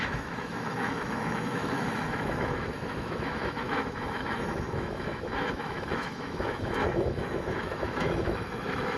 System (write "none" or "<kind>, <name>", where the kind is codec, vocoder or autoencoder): autoencoder, DAC-VAE